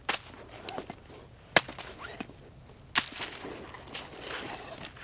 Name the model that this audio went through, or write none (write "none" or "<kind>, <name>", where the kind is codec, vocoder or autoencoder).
none